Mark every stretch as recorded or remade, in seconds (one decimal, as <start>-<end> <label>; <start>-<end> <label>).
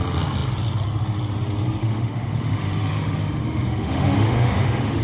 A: 0.0-1.8 recorded; 1.8-5.0 remade